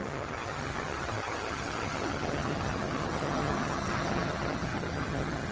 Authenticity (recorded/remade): remade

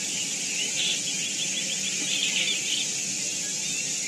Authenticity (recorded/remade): recorded